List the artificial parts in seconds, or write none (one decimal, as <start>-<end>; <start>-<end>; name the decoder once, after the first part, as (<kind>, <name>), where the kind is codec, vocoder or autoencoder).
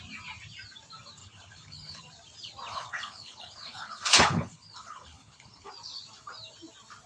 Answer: 1.2-2.0 (codec, HILCodec); 2.7-5.7